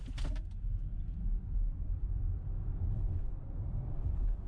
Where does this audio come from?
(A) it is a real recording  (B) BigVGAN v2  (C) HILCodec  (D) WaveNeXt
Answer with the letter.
A